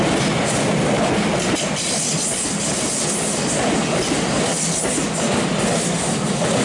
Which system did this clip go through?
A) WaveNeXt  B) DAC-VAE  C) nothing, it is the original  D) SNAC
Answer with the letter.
C